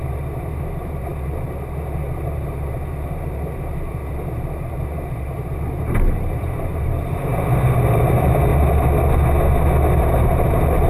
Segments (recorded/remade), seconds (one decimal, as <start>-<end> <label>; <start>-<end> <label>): 0.0-7.3 remade; 7.3-7.8 recorded; 7.8-8.5 remade; 8.5-10.0 recorded; 10.0-10.9 remade